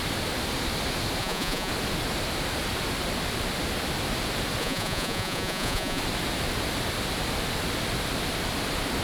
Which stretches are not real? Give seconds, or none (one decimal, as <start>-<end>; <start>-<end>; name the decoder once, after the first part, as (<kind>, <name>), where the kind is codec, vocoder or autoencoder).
1.2-1.7 (vocoder, Vocos); 4.6-6.0